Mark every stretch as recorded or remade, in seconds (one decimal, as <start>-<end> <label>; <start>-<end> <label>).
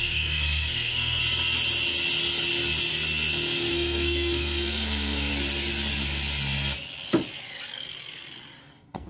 0.0-1.2 remade; 1.2-3.7 recorded; 3.7-5.3 remade; 5.3-8.6 recorded; 8.6-9.1 remade